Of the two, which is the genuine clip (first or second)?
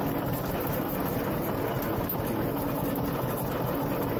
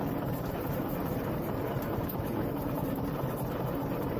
first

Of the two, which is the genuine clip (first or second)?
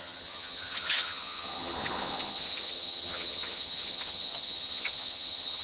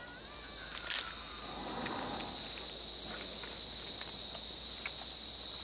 second